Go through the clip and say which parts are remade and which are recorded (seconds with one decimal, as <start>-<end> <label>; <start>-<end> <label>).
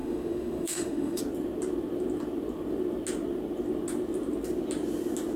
0.0-1.2 remade; 1.2-5.4 recorded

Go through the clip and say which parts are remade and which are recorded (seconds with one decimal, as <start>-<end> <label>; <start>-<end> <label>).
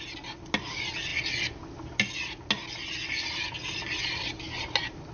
0.0-5.1 recorded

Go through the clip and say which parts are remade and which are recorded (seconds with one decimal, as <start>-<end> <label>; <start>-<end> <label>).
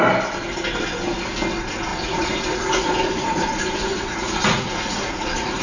0.0-1.9 recorded; 1.9-5.6 remade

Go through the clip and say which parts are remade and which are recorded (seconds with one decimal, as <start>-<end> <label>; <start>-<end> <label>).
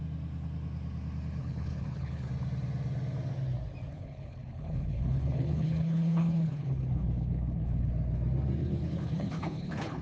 0.0-1.4 recorded; 1.4-2.3 remade; 2.3-3.9 recorded; 3.9-7.9 remade; 7.9-8.6 recorded; 8.6-10.0 remade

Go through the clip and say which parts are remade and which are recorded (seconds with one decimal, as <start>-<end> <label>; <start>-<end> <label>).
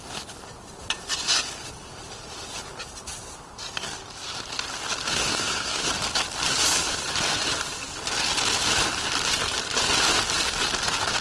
0.0-5.1 recorded; 5.1-5.9 remade; 5.9-11.2 recorded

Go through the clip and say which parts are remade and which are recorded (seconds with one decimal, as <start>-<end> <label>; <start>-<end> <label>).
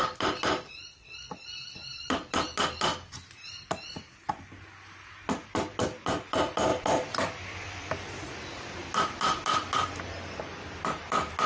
0.0-11.5 recorded